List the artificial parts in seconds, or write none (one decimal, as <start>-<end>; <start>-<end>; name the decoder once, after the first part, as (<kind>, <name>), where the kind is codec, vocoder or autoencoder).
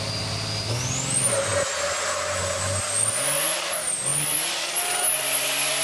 none